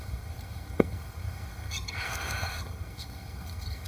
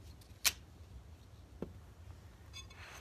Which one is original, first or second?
second